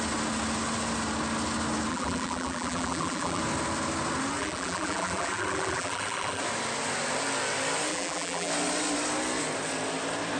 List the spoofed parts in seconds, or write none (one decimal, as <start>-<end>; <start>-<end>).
1.9-3.4; 4.4-6.4; 7.9-8.5